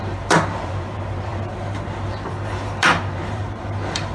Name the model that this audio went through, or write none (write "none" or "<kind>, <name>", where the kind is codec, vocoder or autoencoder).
vocoder, BigVGAN v2